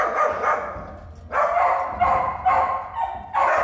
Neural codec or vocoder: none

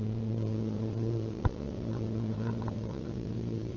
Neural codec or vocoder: vocoder, WaveNeXt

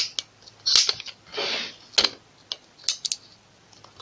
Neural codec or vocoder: none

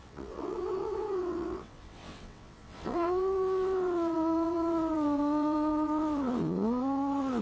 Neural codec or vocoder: vocoder, WaveNeXt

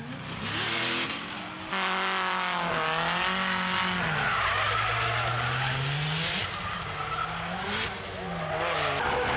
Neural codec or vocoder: none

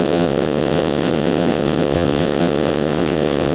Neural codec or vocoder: vocoder, WaveNeXt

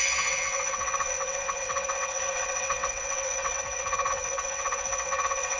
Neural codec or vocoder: vocoder, WaveNeXt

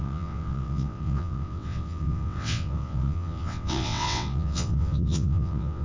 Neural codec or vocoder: vocoder, WaveNeXt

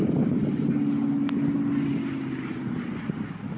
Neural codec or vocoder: none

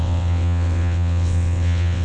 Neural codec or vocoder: vocoder, WaveNeXt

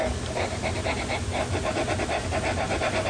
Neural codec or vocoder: none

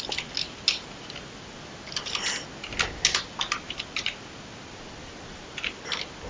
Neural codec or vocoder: none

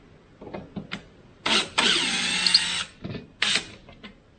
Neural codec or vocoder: none